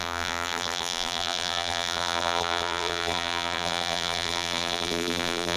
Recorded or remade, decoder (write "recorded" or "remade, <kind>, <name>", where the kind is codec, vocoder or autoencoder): remade, vocoder, BigVGAN v2